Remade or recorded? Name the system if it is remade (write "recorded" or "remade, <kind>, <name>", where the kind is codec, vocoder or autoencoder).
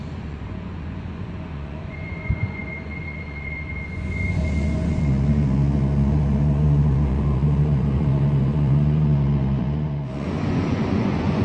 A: remade, vocoder, Vocos